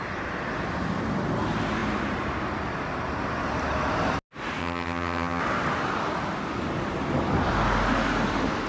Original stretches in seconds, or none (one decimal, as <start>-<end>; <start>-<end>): 0.0-4.6; 5.4-8.7